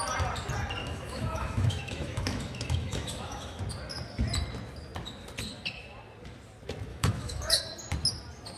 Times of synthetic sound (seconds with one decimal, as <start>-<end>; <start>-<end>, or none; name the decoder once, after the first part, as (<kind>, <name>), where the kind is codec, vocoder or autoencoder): 0.8-3.6 (autoencoder, DAC-VAE); 6.9-7.6